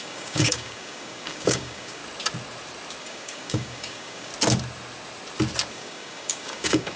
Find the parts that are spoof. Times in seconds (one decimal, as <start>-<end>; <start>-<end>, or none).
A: 0.0-2.0; 3.0-4.3; 5.7-7.0